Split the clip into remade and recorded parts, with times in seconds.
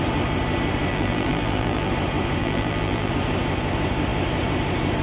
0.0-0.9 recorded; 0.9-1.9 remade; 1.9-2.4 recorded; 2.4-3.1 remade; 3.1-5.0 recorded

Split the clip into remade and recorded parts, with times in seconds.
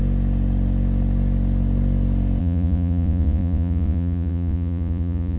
0.0-2.4 recorded; 2.4-5.4 remade